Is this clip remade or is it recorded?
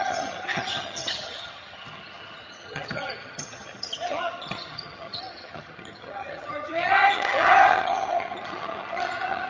remade